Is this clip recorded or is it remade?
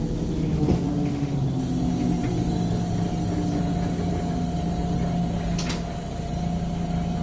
recorded